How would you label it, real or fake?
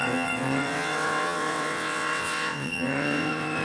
fake